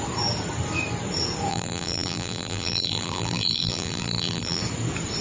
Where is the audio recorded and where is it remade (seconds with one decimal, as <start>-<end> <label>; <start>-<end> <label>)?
0.0-1.5 recorded; 1.5-4.6 remade; 4.6-5.2 recorded